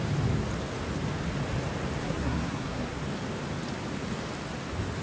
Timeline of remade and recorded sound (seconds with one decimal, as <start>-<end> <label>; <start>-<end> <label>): 0.0-2.0 recorded; 2.0-3.0 remade; 3.0-5.0 recorded